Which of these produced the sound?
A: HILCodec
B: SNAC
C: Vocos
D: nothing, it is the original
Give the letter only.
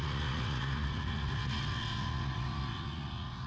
C